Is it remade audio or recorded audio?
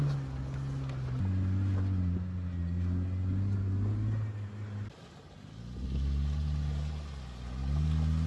recorded